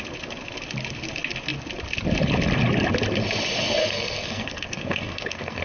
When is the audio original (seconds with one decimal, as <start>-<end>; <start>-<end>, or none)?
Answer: 0.0-3.8